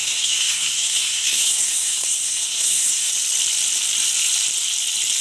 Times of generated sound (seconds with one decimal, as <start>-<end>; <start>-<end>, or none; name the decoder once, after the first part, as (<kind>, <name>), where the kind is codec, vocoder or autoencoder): 0.0-3.1 (codec, SNAC)